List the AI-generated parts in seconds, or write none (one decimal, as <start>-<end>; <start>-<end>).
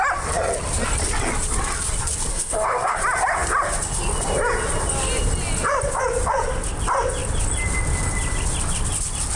2.3-3.0